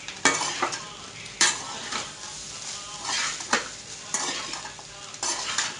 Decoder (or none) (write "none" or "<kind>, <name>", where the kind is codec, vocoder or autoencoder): vocoder, BigVGAN v2